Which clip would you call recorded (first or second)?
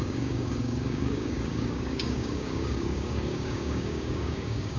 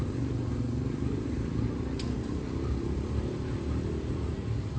second